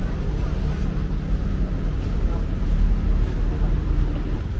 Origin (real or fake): real